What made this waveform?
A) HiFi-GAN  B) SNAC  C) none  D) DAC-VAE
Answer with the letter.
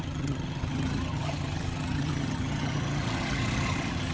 A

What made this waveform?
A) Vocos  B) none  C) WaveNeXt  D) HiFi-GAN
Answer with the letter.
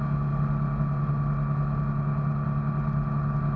B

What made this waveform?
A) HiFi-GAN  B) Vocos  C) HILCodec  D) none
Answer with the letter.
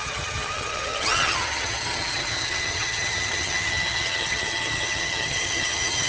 A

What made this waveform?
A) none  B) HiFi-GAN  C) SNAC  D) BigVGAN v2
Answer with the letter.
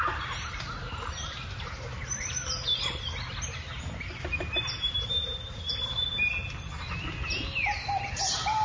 A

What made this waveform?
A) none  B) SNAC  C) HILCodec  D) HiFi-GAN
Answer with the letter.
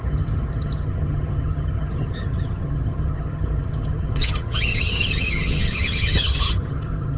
D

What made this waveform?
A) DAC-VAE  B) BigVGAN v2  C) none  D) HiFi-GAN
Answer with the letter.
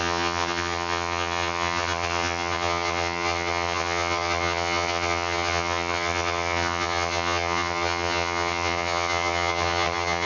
D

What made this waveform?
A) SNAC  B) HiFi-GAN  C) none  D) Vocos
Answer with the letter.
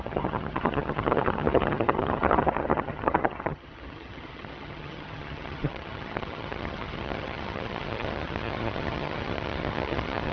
B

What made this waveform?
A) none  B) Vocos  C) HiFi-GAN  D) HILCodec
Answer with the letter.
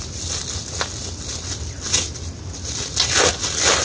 A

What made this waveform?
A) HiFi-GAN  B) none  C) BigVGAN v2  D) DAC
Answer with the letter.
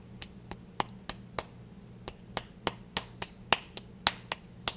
B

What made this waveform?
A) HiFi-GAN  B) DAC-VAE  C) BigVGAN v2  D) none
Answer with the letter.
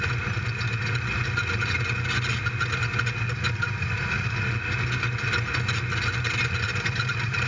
D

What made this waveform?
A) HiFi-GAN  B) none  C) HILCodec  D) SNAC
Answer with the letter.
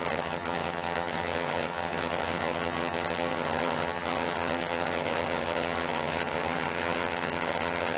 A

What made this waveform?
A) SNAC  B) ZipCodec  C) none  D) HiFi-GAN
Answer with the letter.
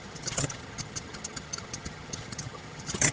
D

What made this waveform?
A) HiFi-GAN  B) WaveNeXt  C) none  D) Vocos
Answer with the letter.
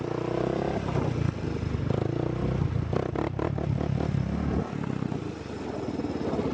C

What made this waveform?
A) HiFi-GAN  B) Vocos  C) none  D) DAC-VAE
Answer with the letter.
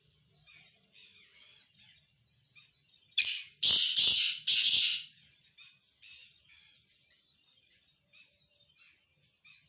C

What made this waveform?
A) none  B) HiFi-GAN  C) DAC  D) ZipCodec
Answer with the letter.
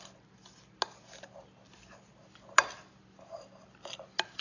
A